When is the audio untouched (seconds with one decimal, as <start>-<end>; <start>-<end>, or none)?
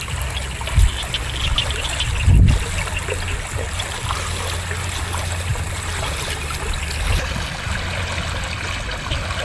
0.0-5.5; 6.4-9.4